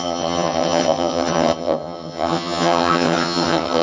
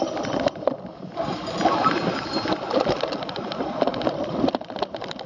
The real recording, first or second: second